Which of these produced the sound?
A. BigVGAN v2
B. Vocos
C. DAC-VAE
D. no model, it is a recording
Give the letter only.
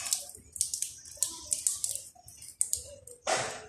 D